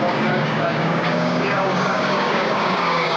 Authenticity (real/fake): fake